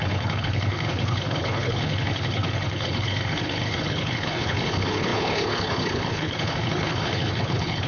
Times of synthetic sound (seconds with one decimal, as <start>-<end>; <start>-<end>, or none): 0.0-7.9